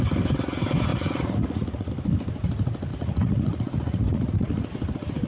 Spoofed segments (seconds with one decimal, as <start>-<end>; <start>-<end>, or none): 0.9-1.9; 2.9-4.7